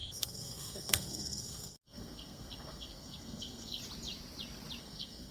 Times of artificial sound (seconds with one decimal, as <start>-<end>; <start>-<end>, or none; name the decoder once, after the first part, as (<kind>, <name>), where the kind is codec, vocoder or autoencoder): 0.0-3.8 (codec, SNAC); 4.8-5.3